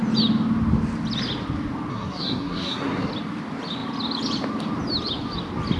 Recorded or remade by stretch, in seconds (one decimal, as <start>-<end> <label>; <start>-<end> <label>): 0.0-1.9 recorded; 1.9-3.1 remade; 3.1-5.8 recorded